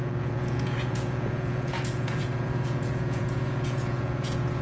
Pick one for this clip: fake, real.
fake